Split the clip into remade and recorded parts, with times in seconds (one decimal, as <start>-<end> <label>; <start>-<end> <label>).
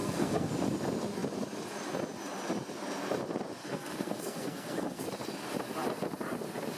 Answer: 0.0-0.5 remade; 0.5-3.6 recorded; 3.6-5.0 remade; 5.0-6.8 recorded